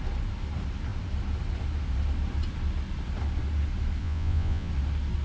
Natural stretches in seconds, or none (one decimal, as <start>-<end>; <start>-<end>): 0.0-4.0; 4.7-5.2